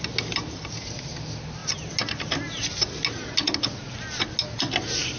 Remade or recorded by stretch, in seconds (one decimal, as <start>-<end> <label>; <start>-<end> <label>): 0.0-5.2 recorded